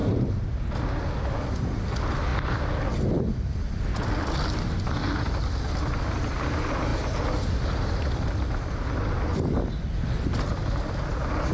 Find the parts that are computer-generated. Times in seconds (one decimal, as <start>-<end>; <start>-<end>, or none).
0.0-0.7